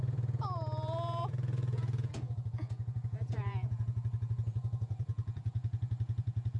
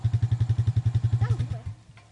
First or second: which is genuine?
second